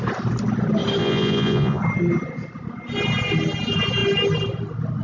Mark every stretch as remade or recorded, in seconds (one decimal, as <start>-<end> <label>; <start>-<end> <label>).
0.0-1.0 recorded; 1.0-1.8 remade; 1.8-5.0 recorded